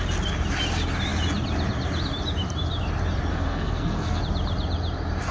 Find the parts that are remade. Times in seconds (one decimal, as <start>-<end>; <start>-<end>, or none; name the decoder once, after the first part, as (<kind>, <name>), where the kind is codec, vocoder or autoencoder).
3.3-4.2 (codec, SNAC)